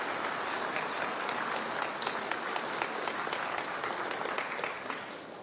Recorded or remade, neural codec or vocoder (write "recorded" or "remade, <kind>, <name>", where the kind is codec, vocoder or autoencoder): recorded